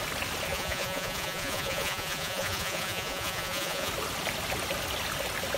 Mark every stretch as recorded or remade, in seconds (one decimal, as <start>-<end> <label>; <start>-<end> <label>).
0.0-0.5 recorded; 0.5-3.9 remade; 3.9-5.6 recorded